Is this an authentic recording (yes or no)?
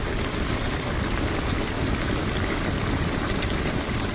yes